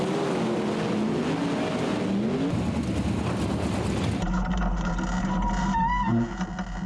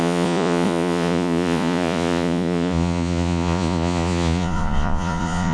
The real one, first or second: first